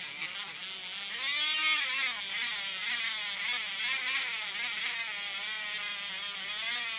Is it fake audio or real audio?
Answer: real